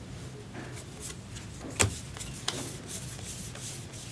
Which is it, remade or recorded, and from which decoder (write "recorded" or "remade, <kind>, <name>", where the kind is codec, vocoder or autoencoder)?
recorded